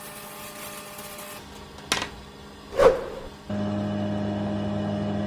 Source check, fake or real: real